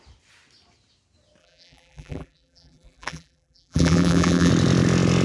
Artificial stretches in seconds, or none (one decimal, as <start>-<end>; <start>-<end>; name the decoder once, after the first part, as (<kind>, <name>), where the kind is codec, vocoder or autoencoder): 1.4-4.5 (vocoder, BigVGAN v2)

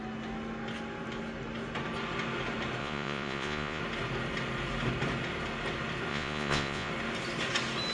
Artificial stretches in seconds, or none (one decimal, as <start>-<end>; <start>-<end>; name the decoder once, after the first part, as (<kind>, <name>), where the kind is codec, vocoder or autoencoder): 2.8-3.8 (vocoder, Vocos); 6.1-6.9

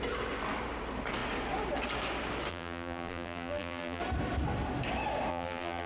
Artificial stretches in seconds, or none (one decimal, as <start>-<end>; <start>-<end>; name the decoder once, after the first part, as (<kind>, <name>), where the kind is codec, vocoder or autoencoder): 2.5-4.0 (vocoder, BigVGAN v2); 5.3-5.9

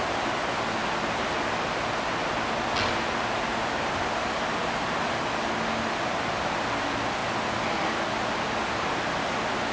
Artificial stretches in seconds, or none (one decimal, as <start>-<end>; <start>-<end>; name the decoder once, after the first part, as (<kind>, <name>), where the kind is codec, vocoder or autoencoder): none